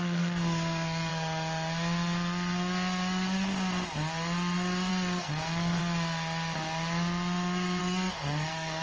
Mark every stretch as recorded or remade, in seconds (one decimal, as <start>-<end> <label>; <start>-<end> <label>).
0.0-1.1 remade; 1.1-4.9 recorded; 4.9-5.8 remade; 5.8-7.8 recorded; 7.8-8.8 remade